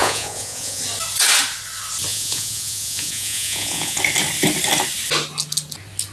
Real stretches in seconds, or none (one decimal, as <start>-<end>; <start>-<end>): 0.8-2.1; 4.0-6.1